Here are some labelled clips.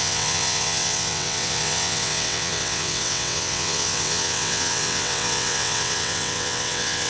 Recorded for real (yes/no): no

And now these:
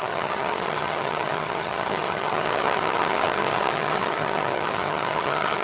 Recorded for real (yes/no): no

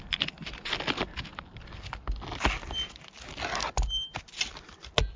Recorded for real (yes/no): yes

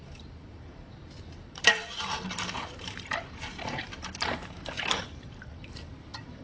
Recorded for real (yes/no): no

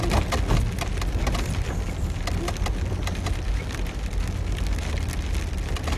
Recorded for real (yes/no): yes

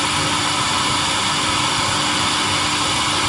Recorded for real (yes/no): yes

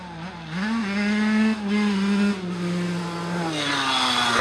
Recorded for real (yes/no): yes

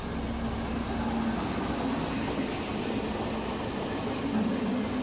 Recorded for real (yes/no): yes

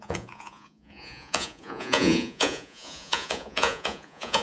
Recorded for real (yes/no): no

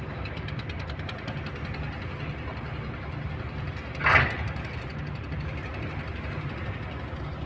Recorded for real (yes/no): yes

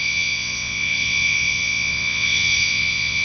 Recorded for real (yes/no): no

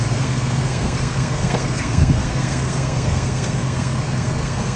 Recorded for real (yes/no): no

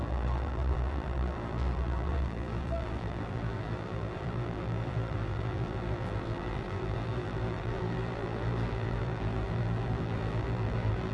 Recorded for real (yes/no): no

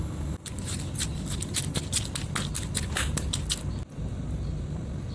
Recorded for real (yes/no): yes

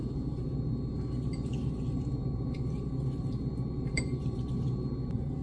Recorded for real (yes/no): no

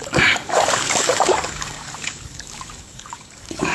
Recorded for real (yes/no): no